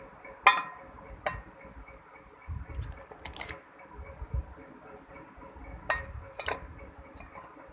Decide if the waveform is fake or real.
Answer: real